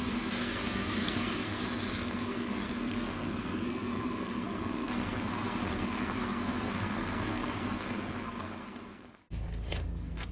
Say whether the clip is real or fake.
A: fake